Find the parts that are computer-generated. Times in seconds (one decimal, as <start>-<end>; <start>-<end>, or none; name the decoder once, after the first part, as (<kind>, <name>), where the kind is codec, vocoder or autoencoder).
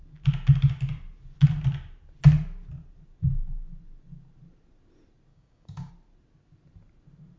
5.3-5.9 (codec, DAC)